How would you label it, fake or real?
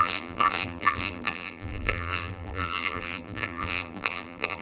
fake